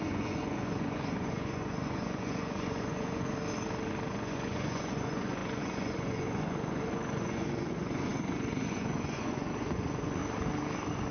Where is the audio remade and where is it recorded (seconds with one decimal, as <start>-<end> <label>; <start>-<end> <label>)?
0.0-3.3 remade; 3.3-4.1 recorded; 4.1-10.2 remade; 10.2-11.1 recorded